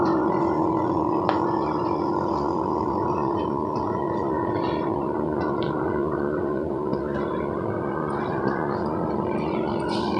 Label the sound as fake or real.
fake